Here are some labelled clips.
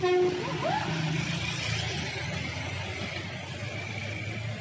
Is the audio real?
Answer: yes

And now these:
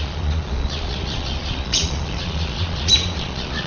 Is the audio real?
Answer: no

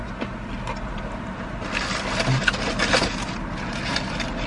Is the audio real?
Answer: yes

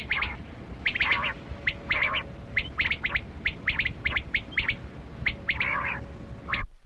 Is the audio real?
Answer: yes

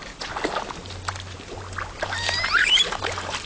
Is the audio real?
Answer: yes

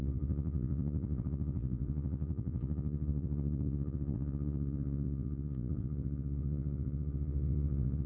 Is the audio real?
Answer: no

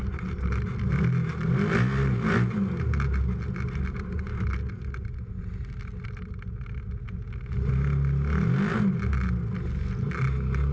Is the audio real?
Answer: yes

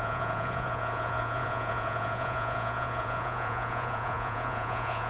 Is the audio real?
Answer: no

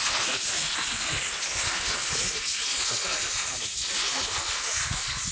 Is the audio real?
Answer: yes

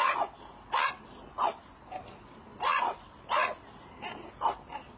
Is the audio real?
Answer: yes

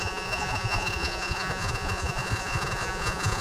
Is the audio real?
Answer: no